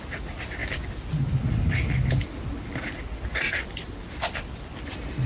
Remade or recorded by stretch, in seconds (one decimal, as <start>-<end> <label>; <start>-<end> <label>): 0.0-5.3 recorded